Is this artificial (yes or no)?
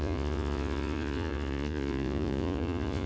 yes